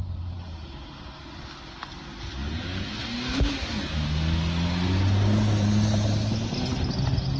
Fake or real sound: real